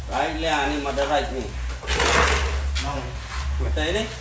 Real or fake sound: real